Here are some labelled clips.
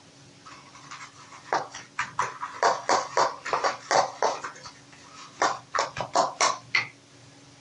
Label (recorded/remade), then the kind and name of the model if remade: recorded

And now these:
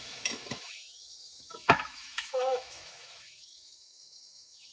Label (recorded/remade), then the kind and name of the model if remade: remade, autoencoder, DAC-VAE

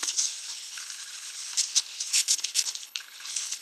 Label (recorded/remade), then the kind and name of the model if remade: remade, codec, HILCodec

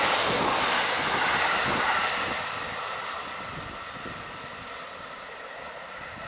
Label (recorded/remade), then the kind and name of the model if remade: recorded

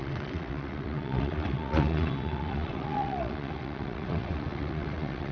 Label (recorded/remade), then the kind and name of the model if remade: remade, vocoder, WaveNeXt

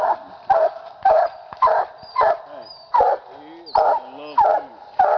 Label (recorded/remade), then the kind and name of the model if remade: recorded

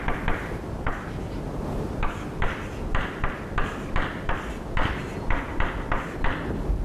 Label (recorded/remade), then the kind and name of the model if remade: recorded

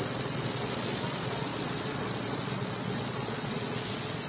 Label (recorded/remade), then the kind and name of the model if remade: remade, vocoder, Vocos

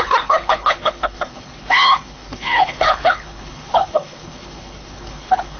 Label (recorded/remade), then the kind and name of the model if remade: remade, codec, HILCodec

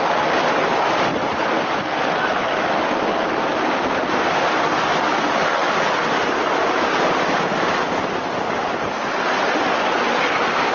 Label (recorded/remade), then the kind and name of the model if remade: recorded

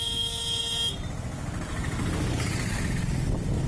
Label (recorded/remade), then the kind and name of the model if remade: recorded